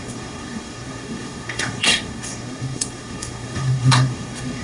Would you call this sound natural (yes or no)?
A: no